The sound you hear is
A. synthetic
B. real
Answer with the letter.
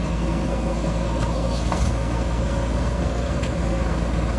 A